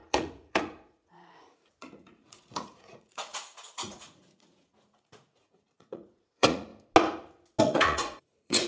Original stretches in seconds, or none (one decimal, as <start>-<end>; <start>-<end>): 6.7-7.6

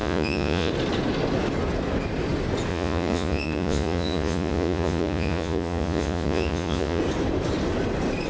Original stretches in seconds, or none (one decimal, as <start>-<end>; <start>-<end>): 0.7-2.7; 7.0-8.3

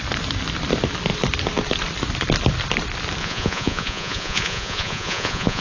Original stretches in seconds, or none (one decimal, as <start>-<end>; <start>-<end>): 0.0-3.2